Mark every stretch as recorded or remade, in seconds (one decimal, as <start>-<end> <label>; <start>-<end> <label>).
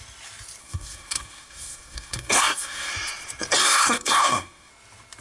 0.0-0.6 recorded; 0.6-2.9 remade; 2.9-3.6 recorded; 3.6-4.7 remade; 4.7-5.2 recorded